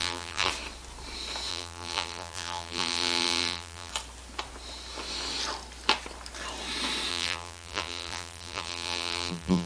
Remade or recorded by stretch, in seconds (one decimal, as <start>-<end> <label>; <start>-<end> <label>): 0.0-0.5 remade; 0.5-1.5 recorded; 1.5-3.9 remade; 3.9-7.1 recorded; 7.1-9.7 remade